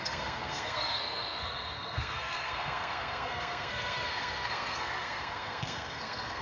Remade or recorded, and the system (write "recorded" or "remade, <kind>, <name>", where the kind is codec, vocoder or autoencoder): remade, codec, SNAC